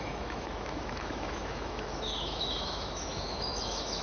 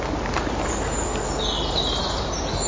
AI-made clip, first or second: first